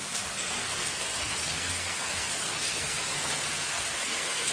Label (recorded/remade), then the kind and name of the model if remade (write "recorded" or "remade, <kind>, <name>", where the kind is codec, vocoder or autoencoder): remade, codec, SNAC